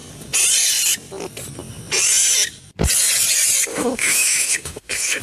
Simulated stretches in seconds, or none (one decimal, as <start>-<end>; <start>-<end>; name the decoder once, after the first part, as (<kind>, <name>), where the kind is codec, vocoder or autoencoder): 3.7-5.2 (autoencoder, DAC-VAE)